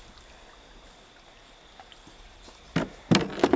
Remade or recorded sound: recorded